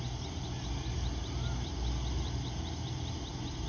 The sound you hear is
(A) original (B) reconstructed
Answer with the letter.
A